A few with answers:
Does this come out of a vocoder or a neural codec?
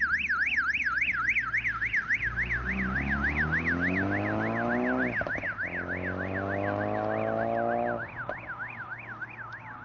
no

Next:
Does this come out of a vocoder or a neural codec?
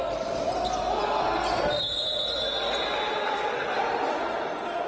no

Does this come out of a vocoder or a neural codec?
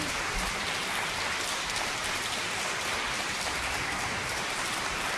yes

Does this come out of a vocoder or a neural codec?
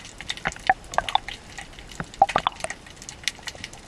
no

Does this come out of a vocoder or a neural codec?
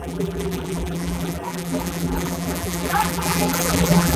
yes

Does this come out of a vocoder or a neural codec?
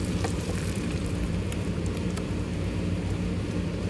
yes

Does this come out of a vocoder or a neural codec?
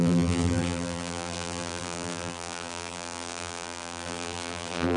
yes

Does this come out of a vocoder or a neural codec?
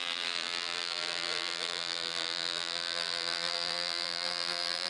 yes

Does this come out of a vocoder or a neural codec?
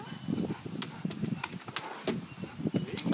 no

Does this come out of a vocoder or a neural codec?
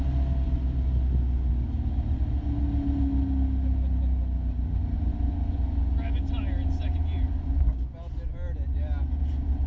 no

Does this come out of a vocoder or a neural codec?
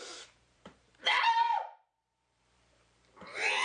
yes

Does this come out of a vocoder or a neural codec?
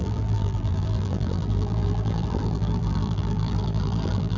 yes